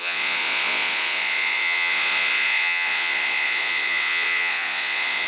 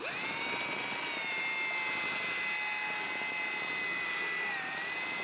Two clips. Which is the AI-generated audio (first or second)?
first